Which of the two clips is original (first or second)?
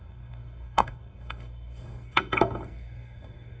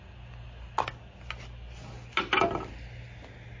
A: second